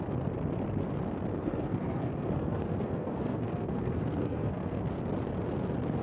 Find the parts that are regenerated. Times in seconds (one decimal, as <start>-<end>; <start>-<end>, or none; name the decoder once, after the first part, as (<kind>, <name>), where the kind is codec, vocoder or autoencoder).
1.4-5.0 (codec, SNAC)